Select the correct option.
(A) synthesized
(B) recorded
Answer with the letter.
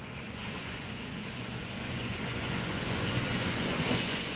A